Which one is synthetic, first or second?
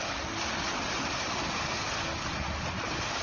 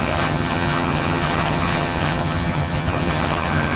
second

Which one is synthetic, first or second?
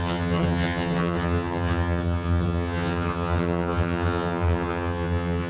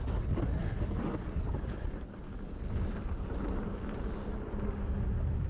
first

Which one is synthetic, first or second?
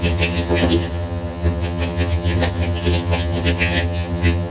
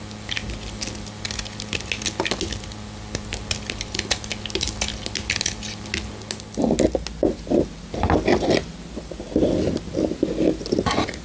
first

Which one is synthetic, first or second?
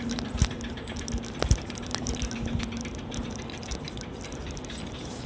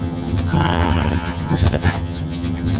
second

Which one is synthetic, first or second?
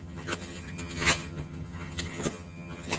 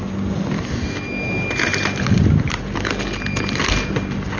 first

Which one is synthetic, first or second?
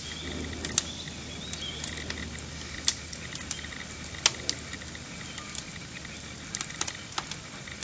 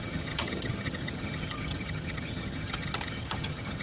second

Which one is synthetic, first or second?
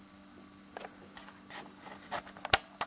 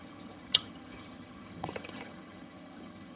second